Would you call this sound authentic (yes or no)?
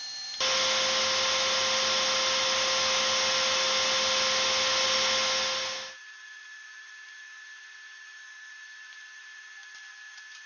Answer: yes